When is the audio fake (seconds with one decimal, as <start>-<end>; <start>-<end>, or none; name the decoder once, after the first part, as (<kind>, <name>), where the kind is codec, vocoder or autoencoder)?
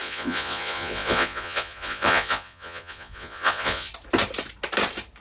0.0-3.9 (vocoder, Vocos)